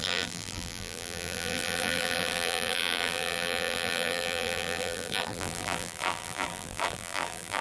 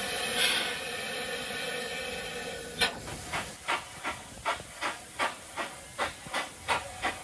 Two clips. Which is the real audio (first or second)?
second